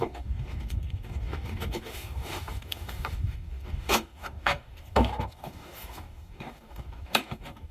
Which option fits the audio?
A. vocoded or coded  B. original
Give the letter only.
A